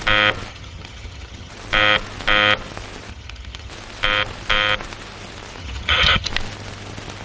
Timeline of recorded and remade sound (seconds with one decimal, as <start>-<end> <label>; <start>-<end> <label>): 0.0-0.5 recorded; 0.5-1.5 remade; 1.5-3.1 recorded; 3.1-3.7 remade; 3.7-5.6 recorded; 5.6-6.3 remade; 6.3-7.2 recorded